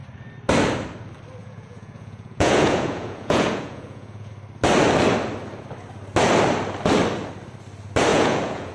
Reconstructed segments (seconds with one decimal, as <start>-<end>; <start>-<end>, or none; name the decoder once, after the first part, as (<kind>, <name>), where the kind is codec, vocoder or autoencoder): 1.4-4.3 (vocoder, Vocos); 8.1-8.7